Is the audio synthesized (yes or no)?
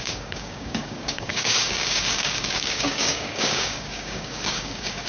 yes